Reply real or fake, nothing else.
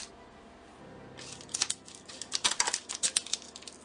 real